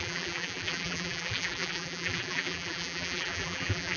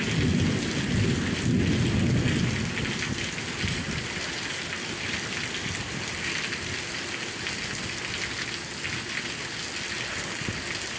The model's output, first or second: first